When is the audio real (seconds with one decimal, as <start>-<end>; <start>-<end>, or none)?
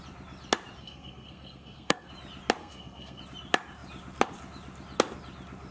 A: 0.0-0.8; 2.1-2.6; 3.2-5.7